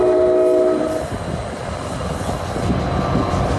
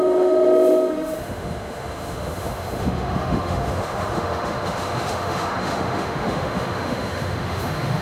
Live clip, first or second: first